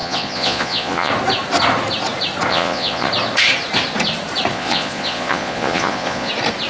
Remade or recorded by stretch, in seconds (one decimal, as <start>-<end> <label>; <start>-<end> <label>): 0.0-1.1 remade; 1.1-2.5 recorded; 2.5-3.1 remade; 3.1-4.5 recorded; 4.5-6.3 remade; 6.3-6.7 recorded